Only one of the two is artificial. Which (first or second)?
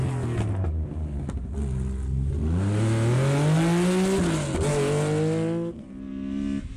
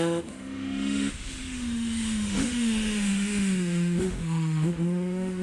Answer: second